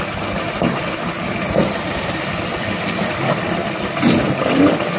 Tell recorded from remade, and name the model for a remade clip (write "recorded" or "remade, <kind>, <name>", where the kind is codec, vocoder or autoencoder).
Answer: recorded